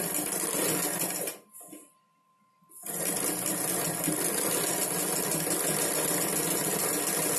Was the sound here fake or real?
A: real